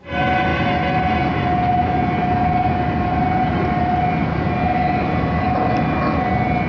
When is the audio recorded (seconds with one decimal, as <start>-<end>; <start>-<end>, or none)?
0.0-6.7